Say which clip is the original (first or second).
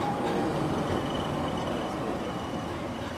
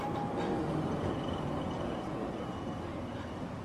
second